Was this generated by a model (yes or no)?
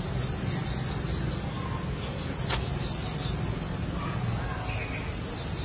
no